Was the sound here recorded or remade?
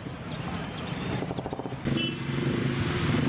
recorded